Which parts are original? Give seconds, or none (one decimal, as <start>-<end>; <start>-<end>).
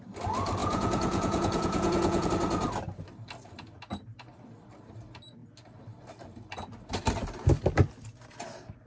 0.0-0.6; 2.3-8.9